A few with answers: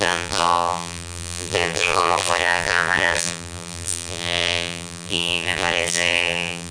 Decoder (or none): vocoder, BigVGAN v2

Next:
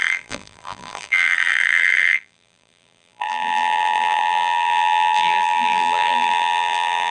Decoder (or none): vocoder, BigVGAN v2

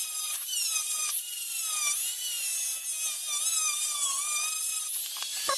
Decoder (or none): vocoder, BigVGAN v2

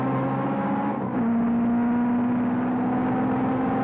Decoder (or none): none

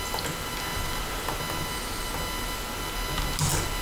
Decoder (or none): none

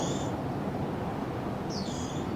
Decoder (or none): none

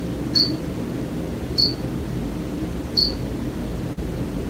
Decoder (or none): none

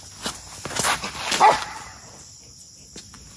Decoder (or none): none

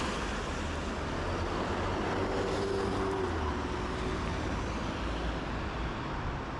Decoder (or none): none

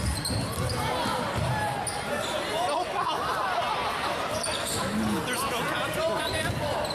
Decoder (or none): none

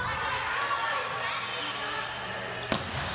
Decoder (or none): none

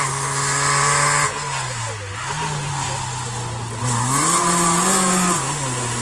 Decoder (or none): none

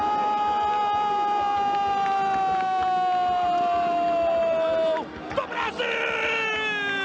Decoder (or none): none